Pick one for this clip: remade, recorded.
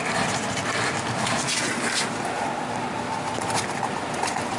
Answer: recorded